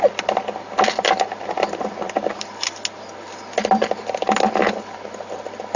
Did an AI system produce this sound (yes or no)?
no